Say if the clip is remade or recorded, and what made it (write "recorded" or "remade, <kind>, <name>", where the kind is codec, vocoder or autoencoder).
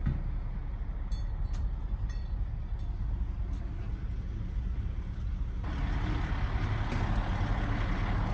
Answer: recorded